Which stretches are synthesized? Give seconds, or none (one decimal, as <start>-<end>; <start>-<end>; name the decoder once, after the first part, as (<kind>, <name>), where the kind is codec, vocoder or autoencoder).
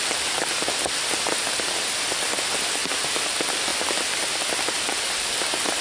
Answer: 2.8-3.3 (vocoder, BigVGAN v2)